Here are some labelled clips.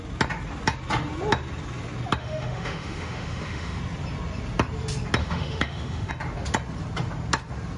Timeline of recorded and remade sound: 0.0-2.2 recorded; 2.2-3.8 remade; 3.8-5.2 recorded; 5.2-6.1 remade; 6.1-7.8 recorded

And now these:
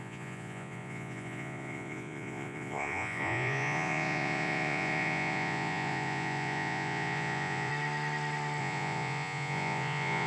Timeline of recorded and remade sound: 0.0-7.7 remade; 7.7-8.6 recorded; 8.6-10.3 remade

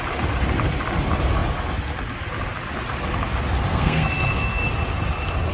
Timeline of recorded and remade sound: 0.0-3.7 recorded; 3.7-4.6 remade; 4.6-5.5 recorded

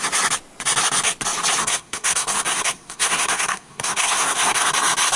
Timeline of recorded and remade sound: 0.0-1.6 recorded; 1.6-4.7 remade; 4.7-5.2 recorded

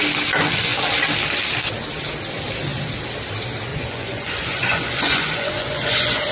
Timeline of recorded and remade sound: 0.0-3.7 recorded; 3.7-6.3 remade

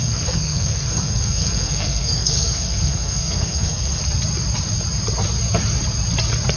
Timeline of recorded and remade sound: 0.0-4.0 remade; 4.0-6.6 recorded